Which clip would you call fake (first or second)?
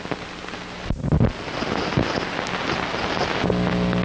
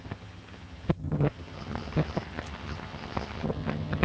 second